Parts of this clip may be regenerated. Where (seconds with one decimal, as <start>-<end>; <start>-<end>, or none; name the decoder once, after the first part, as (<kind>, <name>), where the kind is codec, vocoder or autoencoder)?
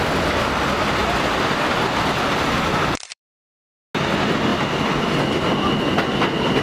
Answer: 1.0-3.3 (vocoder, BigVGAN v2)